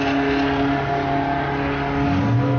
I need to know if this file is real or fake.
real